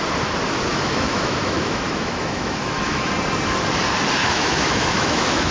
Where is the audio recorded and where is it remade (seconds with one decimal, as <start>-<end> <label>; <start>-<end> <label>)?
0.0-0.7 recorded; 0.7-3.1 remade; 3.1-4.2 recorded; 4.2-5.5 remade